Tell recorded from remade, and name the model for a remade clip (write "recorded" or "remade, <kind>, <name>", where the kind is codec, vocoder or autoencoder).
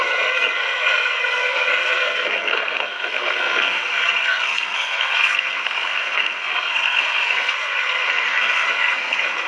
remade, codec, SNAC